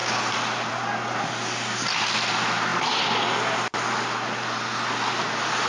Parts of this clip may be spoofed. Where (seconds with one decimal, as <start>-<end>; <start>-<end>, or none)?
none